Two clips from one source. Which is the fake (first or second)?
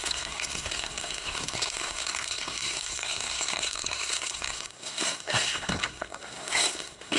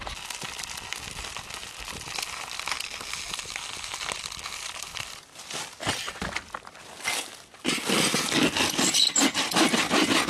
first